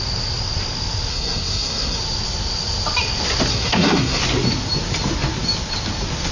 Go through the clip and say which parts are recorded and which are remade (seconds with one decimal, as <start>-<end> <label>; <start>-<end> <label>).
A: 0.0-1.1 recorded; 1.1-2.0 remade; 2.0-3.5 recorded; 3.5-4.2 remade; 4.2-6.3 recorded